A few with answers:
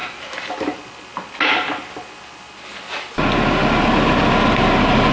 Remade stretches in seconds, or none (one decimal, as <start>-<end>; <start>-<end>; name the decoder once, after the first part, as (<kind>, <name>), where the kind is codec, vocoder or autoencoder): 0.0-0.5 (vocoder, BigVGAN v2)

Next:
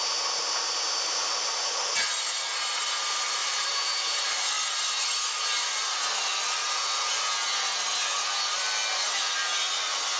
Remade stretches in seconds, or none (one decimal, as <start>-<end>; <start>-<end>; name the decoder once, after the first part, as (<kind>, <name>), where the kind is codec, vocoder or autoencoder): 3.4-4.5 (vocoder, BigVGAN v2)

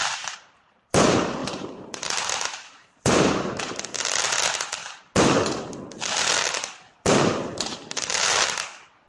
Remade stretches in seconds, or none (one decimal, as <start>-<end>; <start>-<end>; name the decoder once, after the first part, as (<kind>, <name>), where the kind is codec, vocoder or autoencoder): 0.0-0.5 (vocoder, BigVGAN v2); 1.4-3.6

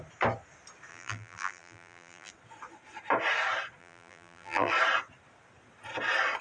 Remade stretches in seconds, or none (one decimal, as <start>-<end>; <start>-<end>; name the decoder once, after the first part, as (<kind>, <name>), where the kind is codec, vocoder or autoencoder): 0.9-2.3 (vocoder, BigVGAN v2); 3.8-4.7

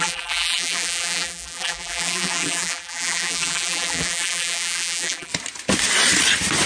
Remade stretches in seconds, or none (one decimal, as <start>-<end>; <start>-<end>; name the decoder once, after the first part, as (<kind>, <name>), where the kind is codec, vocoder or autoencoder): 0.0-5.3 (vocoder, BigVGAN v2)

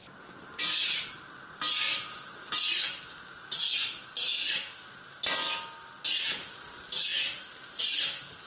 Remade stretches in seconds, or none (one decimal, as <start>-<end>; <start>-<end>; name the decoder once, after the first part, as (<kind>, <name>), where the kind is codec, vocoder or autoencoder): 0.0-1.1 (vocoder, BigVGAN v2)

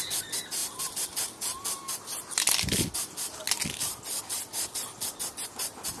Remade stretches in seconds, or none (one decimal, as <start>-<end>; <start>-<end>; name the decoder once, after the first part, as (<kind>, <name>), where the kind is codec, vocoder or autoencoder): none